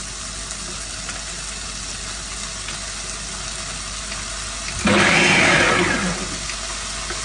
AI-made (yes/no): no